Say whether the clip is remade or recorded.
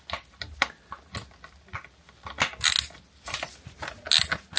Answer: recorded